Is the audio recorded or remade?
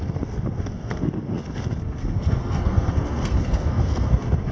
remade